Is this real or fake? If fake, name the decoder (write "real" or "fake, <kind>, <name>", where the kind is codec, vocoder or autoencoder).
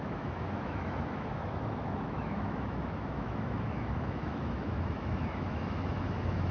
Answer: fake, autoencoder, DAC-VAE